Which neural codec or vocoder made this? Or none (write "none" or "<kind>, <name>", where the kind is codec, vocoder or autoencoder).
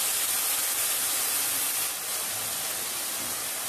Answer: none